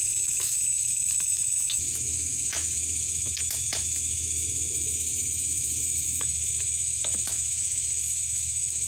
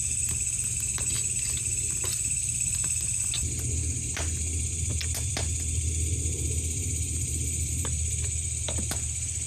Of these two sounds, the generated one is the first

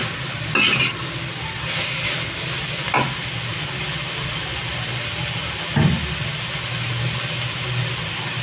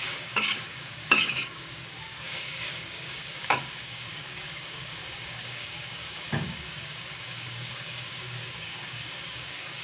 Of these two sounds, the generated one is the second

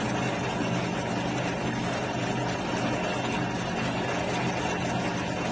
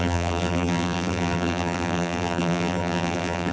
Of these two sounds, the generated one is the second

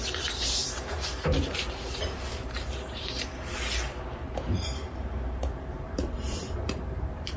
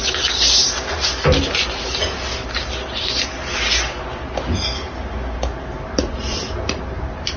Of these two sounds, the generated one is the first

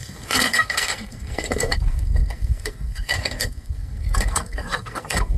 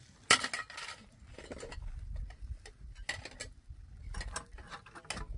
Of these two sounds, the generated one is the first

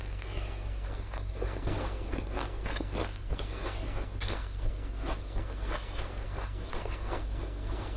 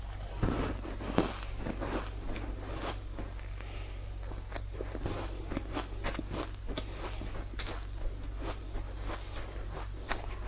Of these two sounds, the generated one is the first